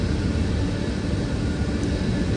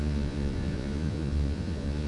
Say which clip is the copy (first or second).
second